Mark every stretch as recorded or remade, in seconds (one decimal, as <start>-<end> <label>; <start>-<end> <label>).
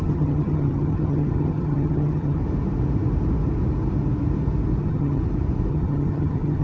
0.0-2.4 remade; 2.4-4.8 recorded; 4.8-5.2 remade; 5.2-5.7 recorded; 5.7-6.6 remade